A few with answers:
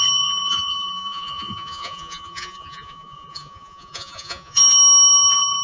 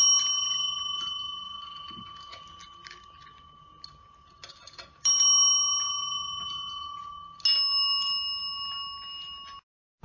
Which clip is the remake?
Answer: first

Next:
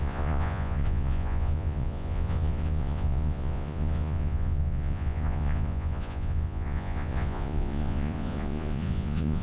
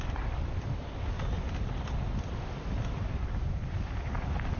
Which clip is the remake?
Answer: first